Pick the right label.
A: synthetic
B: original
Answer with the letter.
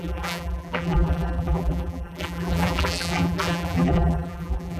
A